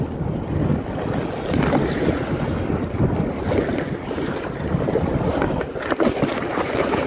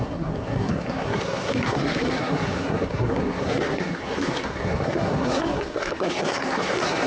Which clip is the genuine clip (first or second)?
first